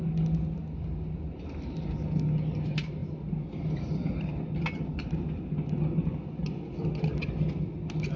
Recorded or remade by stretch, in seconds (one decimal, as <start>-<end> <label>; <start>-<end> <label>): 0.0-8.2 recorded